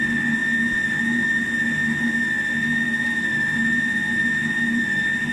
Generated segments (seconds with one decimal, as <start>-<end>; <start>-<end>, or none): none